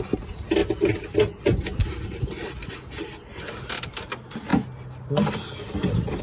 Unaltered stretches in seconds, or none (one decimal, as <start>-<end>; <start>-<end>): 0.0-0.6; 1.2-6.2